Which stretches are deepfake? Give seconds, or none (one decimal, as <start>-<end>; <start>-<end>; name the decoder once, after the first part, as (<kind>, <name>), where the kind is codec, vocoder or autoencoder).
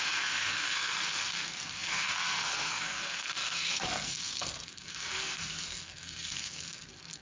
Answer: 0.0-7.2 (codec, SNAC)